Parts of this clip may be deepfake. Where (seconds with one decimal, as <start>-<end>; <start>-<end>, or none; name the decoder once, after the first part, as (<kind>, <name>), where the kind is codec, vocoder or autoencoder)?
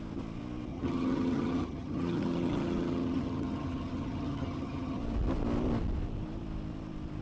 0.7-5.0 (vocoder, HiFi-GAN)